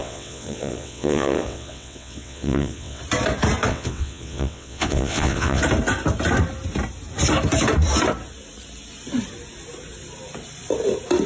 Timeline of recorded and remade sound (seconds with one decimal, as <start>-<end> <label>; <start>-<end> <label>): 0.0-3.0 remade; 3.0-3.7 recorded; 3.7-5.6 remade; 5.6-11.3 recorded